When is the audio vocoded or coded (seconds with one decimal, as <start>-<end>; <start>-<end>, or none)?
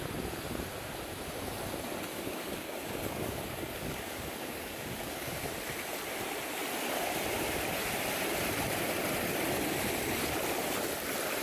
2.1-5.5